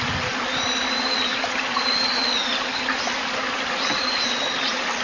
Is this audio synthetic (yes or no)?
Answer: no